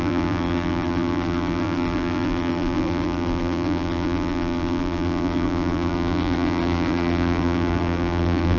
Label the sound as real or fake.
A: fake